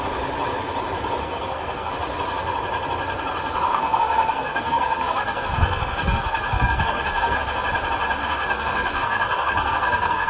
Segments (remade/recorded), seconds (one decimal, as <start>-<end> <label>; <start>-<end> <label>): 0.0-1.2 recorded; 1.2-1.9 remade; 1.9-3.7 recorded; 3.7-7.4 remade; 7.4-8.2 recorded; 8.2-10.3 remade